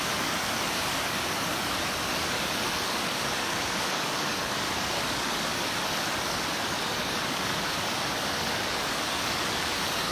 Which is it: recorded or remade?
remade